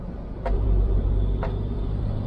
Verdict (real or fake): fake